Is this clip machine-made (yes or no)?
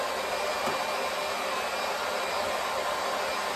no